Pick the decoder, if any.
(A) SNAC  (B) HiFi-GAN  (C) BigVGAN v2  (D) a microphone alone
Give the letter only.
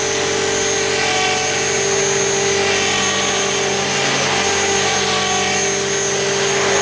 D